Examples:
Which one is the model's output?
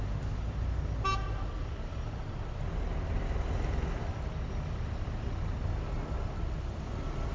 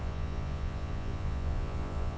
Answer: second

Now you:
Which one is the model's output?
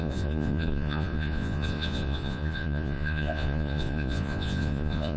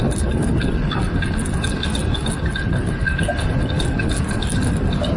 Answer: first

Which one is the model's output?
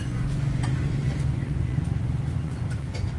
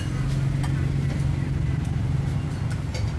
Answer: first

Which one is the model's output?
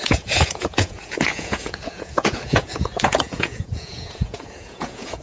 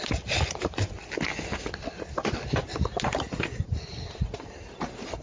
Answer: first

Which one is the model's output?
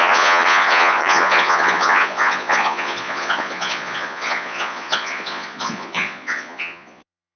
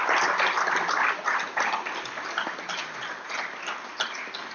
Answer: first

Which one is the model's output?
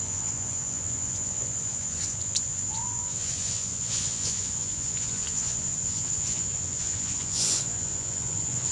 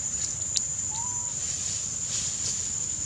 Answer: first